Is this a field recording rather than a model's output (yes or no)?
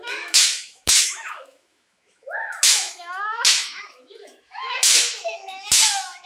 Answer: no